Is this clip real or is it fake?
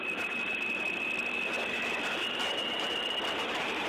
fake